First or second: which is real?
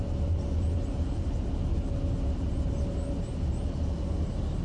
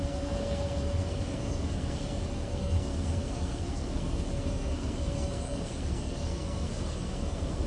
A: first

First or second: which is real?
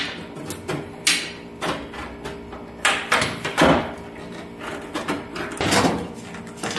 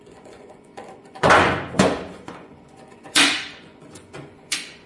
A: first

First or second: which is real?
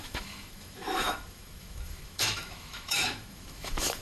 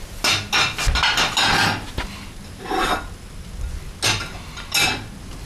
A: second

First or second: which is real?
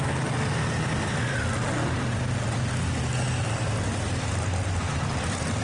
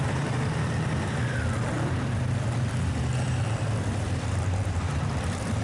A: first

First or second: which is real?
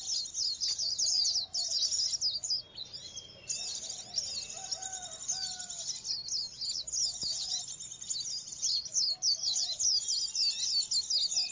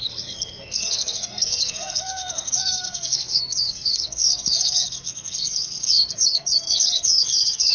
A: first